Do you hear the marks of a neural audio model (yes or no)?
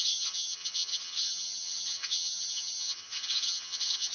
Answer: yes